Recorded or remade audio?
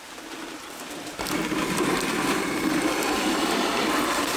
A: remade